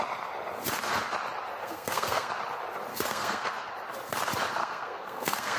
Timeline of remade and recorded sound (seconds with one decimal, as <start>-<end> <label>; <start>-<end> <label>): 0.0-1.6 recorded; 1.6-2.3 remade; 2.3-2.9 recorded; 2.9-3.7 remade; 3.7-4.6 recorded; 4.6-5.6 remade